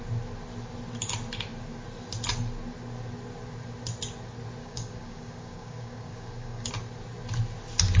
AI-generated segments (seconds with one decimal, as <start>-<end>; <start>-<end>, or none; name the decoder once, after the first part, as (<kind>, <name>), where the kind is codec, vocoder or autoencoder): 4.6-6.7 (codec, DAC)